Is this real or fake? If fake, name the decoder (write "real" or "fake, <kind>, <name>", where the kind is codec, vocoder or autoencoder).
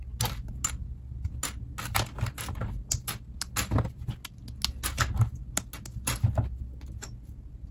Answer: real